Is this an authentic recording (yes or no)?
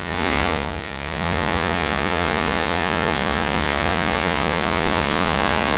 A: no